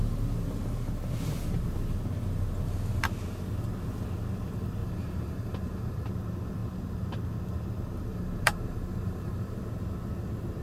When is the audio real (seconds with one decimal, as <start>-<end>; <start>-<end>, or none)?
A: 0.0-4.8; 6.1-8.1; 9.6-10.6